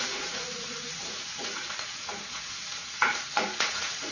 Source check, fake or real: fake